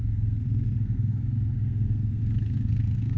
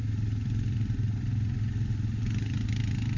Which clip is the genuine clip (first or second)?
second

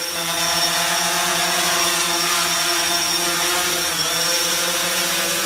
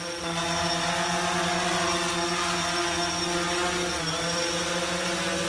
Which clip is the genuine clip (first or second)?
second